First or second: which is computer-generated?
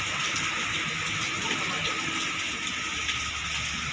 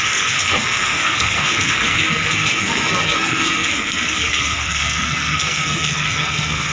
second